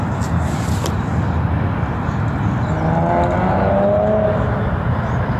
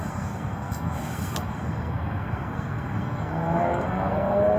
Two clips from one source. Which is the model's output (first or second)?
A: second